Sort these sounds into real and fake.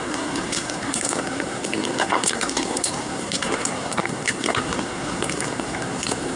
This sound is fake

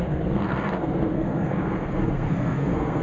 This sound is fake